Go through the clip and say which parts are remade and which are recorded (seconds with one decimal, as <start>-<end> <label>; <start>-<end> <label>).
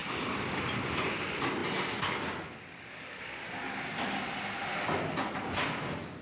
0.0-0.6 remade; 0.6-6.2 recorded